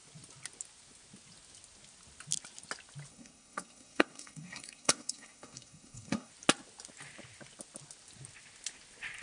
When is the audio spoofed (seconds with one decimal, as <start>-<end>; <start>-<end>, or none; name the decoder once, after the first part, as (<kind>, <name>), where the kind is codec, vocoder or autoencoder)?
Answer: 3.1-6.3 (codec, SNAC)